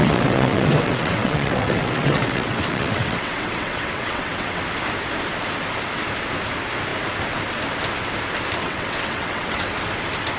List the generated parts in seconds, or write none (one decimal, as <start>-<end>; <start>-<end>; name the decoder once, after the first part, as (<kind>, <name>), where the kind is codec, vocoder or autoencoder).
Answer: 0.0-4.6 (vocoder, WaveNeXt); 8.6-9.7